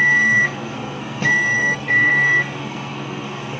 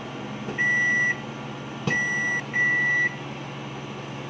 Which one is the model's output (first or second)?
first